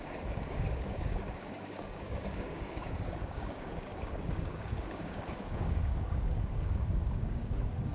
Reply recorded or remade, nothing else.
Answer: remade